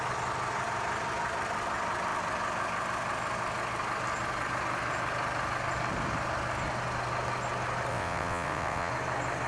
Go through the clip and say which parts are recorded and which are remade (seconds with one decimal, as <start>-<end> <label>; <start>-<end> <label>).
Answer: 0.0-7.9 recorded; 7.9-8.9 remade; 8.9-9.5 recorded